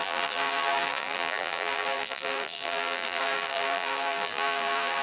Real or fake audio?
fake